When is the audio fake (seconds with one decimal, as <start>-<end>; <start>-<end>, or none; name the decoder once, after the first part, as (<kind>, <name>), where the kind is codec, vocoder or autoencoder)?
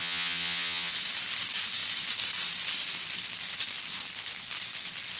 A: 0.0-0.9 (vocoder, HiFi-GAN)